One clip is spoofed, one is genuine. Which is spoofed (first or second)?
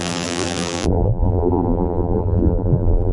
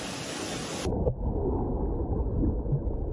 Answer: first